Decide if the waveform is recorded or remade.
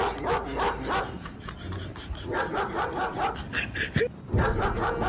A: recorded